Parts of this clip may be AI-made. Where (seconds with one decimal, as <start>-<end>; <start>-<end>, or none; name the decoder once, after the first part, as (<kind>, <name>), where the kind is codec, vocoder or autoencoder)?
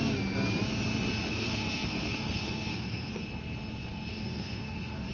1.3-3.2 (codec, SNAC); 4.1-5.1